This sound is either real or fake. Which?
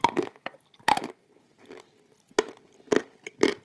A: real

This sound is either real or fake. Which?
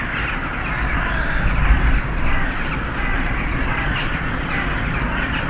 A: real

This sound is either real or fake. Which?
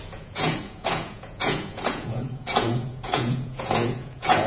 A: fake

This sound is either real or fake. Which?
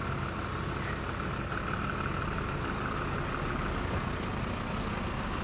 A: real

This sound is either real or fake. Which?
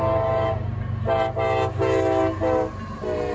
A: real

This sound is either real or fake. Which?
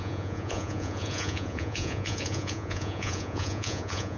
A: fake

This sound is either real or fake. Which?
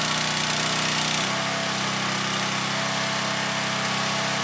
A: real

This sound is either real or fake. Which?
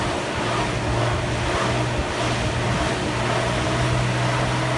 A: real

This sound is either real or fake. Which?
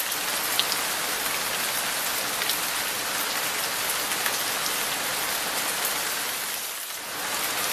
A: real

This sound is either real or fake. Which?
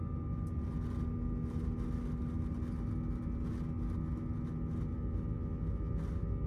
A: real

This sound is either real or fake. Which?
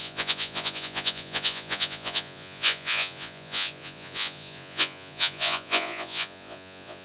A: fake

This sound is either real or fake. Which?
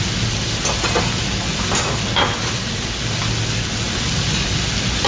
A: real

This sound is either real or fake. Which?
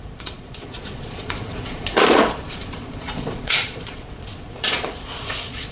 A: fake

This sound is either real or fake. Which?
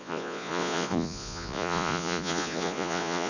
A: fake